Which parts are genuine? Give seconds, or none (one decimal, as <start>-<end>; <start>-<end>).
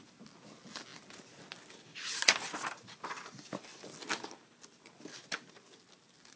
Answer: 0.0-6.4